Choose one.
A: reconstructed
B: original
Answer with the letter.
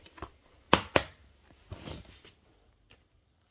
B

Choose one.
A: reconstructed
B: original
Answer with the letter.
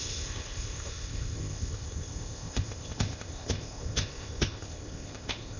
A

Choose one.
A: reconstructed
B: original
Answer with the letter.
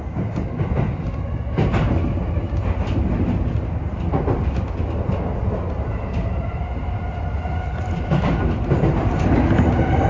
B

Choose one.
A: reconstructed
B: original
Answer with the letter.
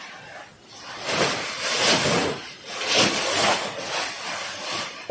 B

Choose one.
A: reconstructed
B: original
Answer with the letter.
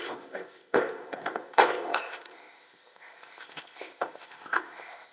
A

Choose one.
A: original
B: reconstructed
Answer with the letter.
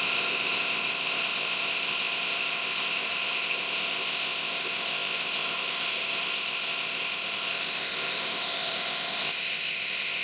B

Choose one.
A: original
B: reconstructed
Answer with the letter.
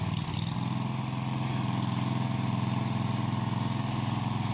A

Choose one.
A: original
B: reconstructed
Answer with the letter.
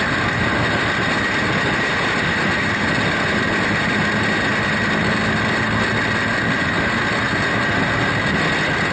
A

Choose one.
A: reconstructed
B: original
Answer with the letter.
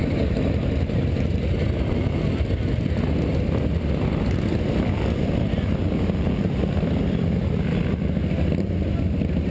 B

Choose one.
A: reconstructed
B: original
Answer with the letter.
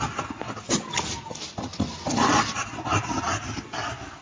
B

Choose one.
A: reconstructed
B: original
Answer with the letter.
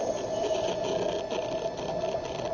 B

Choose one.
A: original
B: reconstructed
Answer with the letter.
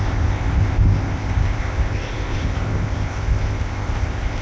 B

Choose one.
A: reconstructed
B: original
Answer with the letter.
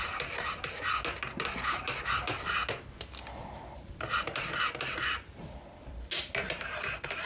B